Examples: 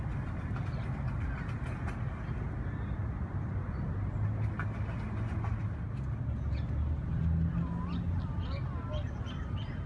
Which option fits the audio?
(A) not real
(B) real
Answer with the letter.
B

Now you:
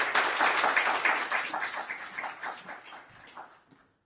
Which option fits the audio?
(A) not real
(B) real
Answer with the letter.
B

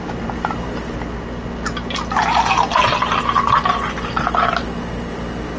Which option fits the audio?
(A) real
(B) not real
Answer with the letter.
A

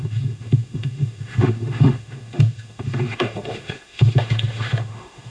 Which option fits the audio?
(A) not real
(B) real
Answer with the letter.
A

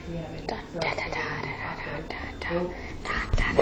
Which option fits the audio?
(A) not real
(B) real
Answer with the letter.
B